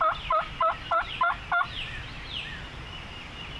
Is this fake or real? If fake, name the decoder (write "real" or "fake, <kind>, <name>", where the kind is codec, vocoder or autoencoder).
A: real